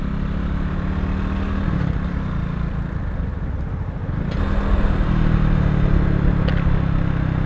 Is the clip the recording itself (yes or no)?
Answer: yes